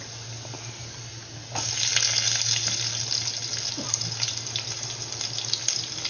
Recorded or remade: recorded